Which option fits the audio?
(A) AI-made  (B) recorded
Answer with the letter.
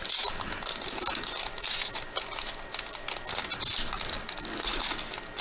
B